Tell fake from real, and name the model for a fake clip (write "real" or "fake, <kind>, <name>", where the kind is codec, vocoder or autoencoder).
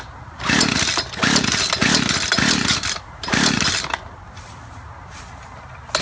real